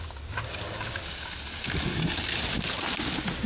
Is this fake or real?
real